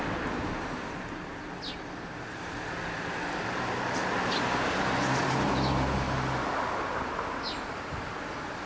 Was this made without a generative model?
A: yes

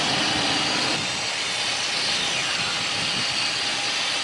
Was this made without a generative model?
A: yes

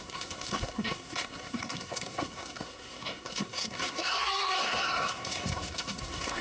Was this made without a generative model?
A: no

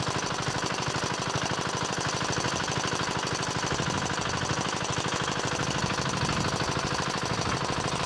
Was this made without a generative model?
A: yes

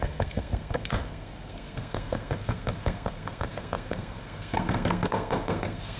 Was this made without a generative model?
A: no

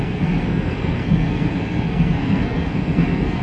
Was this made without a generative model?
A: no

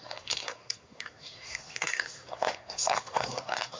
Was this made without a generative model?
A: no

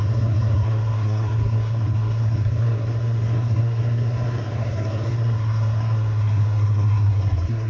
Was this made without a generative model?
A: no